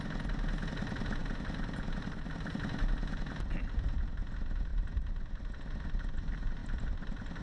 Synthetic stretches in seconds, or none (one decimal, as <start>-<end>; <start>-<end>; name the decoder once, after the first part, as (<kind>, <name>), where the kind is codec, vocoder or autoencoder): 6.6-7.4 (vocoder, BigVGAN v2)